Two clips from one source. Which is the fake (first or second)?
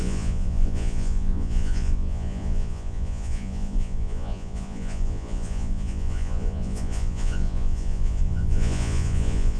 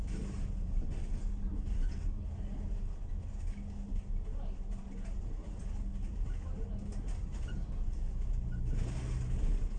first